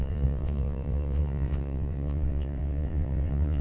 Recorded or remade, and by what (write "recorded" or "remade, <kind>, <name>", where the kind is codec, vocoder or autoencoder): remade, vocoder, WaveNeXt